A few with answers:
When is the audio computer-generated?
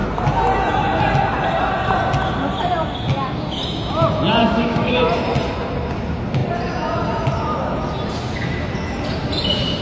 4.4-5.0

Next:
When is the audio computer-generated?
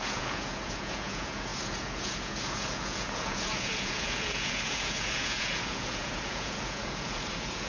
0.0-7.7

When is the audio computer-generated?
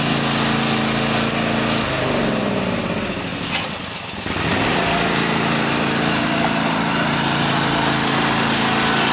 5.2-7.4